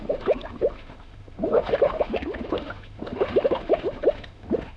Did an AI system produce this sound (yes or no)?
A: yes